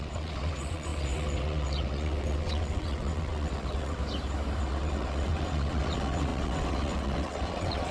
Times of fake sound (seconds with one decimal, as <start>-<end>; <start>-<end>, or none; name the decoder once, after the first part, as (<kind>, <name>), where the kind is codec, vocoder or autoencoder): 0.0-4.0 (vocoder, WaveNeXt); 4.6-7.9